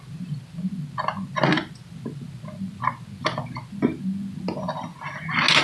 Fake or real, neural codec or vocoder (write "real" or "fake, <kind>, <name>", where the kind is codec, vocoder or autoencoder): real